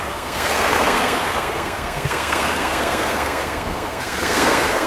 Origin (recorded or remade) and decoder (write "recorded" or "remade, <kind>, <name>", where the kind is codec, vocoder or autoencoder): remade, codec, SNAC